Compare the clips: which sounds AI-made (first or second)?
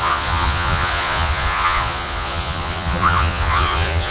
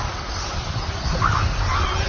first